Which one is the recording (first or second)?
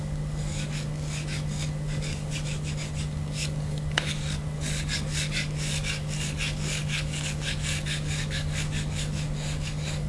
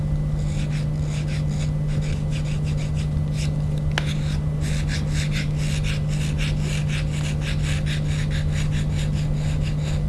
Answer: second